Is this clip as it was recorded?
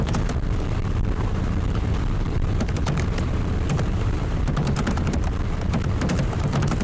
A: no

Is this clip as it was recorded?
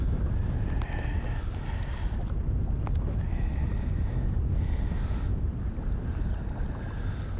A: yes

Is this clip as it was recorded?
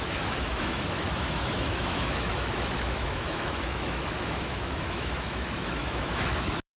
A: no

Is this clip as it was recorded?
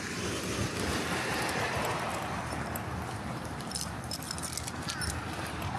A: yes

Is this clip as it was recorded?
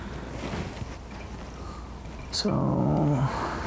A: yes